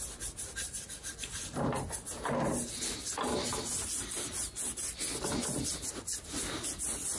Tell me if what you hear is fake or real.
real